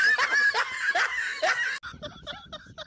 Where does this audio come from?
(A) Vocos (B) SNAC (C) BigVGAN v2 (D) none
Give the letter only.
D